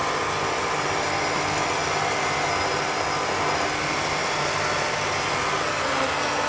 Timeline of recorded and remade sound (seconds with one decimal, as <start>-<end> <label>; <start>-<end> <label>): 0.0-6.5 recorded